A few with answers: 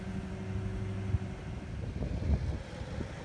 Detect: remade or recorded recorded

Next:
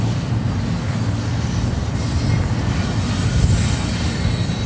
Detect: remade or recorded recorded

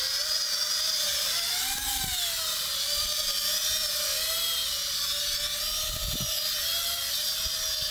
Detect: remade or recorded recorded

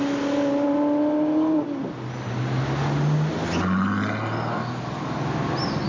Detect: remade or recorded recorded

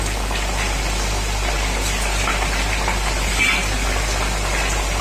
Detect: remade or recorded recorded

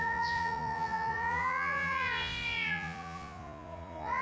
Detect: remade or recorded remade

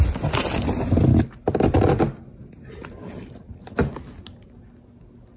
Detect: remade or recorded recorded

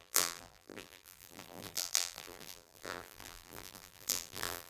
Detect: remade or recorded remade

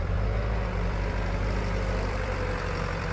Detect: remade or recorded remade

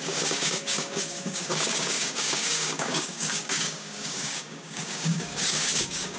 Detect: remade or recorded remade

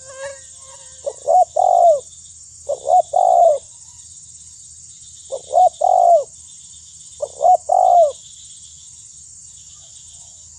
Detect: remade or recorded recorded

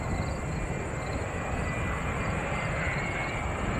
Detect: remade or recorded recorded